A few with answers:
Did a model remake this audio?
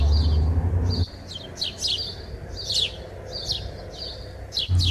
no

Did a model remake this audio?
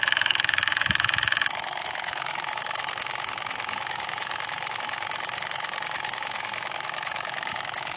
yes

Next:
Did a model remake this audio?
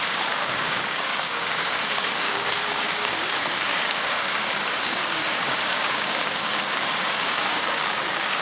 yes